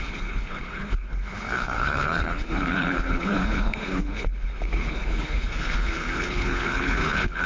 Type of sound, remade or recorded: remade